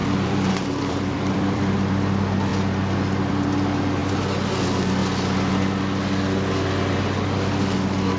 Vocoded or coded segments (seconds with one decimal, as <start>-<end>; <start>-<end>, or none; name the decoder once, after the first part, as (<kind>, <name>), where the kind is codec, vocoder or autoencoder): 0.0-1.6 (vocoder, BigVGAN v2)